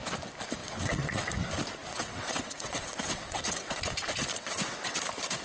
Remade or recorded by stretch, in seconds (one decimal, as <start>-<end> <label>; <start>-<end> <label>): 0.0-0.6 recorded; 0.6-1.3 remade; 1.3-1.9 recorded; 1.9-3.9 remade; 3.9-4.3 recorded; 4.3-5.0 remade; 5.0-5.4 recorded